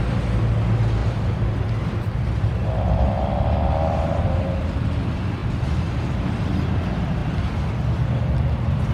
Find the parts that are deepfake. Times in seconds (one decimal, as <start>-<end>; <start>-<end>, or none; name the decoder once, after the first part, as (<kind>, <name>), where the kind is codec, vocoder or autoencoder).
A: 1.0-3.2 (vocoder, BigVGAN v2); 5.4-5.9